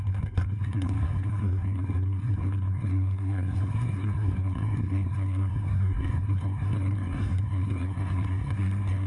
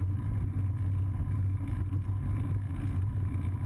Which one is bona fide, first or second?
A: second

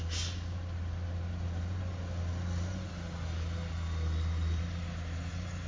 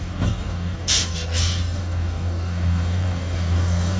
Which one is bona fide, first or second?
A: first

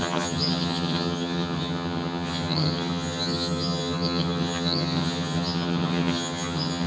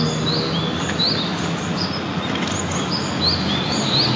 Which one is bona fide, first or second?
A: second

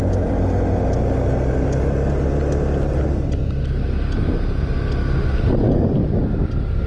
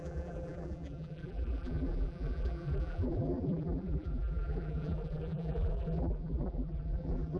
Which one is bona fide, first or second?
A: first